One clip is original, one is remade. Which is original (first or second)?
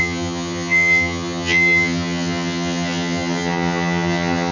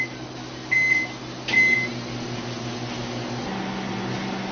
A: second